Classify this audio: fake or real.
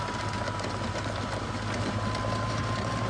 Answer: real